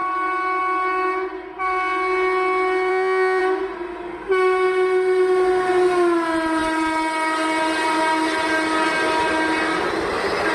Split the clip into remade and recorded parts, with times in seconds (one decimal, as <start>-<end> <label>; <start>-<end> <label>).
0.0-2.9 recorded; 2.9-3.4 remade; 3.4-10.5 recorded